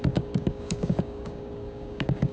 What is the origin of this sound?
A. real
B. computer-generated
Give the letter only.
B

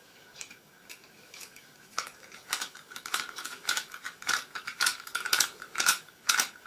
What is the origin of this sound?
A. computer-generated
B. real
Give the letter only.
A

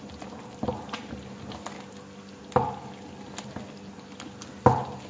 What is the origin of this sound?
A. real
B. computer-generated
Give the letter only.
A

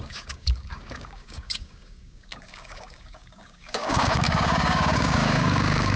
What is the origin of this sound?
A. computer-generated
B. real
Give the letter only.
A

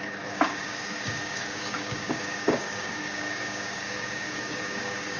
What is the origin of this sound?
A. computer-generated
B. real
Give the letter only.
A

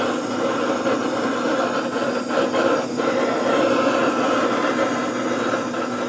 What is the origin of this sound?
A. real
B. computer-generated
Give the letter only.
A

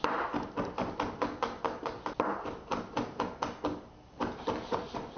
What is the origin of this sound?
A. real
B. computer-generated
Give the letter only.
A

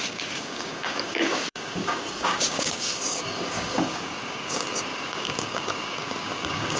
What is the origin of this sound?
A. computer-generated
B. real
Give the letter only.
A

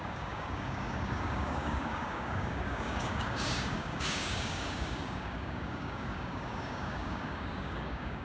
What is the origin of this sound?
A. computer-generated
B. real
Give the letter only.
A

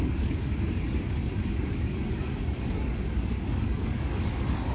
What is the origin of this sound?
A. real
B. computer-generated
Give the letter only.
B